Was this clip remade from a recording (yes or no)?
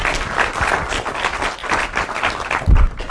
no